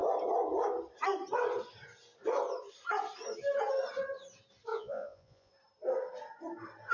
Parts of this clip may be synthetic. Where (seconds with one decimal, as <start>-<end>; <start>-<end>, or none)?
4.7-5.5